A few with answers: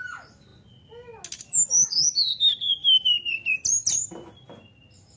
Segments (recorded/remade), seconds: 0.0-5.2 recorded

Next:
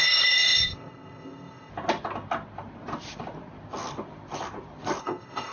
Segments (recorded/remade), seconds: 0.0-1.7 remade; 1.7-5.0 recorded; 5.0-5.5 remade

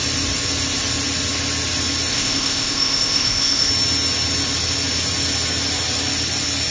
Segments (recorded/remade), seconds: 0.0-2.1 recorded; 2.1-3.7 remade; 3.7-6.7 recorded

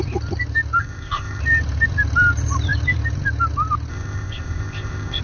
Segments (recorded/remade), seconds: 0.0-0.8 recorded; 0.8-1.4 remade; 1.4-3.9 recorded; 3.9-5.2 remade

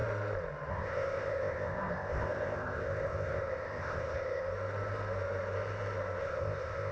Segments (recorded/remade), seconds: 0.0-0.7 recorded; 0.7-4.4 remade; 4.4-6.2 recorded; 6.2-6.9 remade

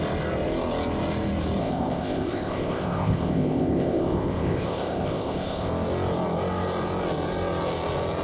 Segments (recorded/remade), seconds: 0.0-1.6 recorded; 1.6-5.7 remade; 5.7-8.2 recorded